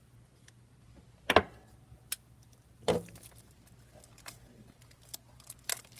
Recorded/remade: recorded